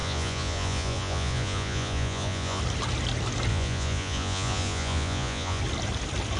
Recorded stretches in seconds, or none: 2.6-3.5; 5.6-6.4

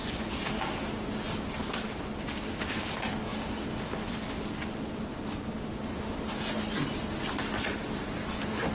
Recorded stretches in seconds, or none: 0.5-8.7

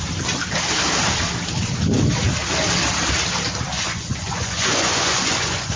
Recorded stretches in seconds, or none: 0.0-3.7

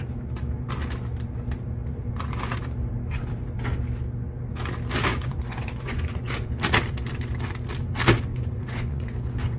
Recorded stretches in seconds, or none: 0.0-5.1; 6.5-8.3

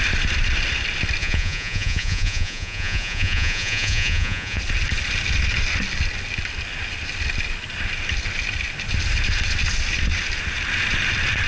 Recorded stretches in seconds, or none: 0.0-1.2; 4.6-11.5